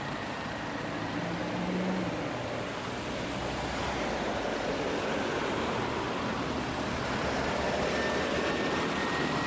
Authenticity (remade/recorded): recorded